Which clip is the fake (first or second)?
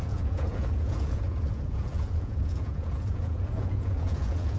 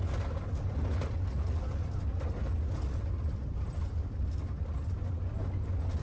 first